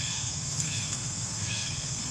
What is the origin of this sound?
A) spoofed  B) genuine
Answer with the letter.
A